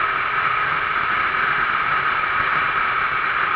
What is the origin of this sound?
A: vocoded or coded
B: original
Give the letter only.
B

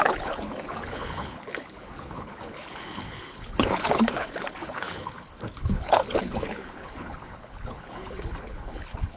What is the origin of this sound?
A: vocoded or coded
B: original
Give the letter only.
A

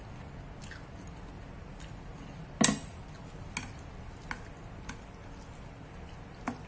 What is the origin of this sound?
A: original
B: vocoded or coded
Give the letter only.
A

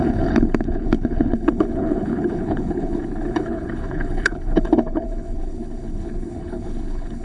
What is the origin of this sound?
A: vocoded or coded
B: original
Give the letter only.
A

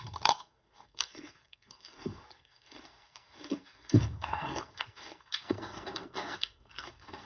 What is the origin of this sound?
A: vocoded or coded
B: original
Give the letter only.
A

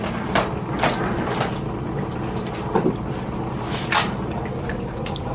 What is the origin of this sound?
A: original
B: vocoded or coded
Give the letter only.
A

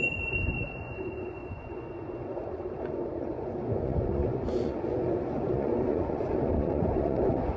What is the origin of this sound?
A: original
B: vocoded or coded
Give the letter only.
B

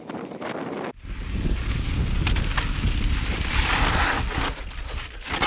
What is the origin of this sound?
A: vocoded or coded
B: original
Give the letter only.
B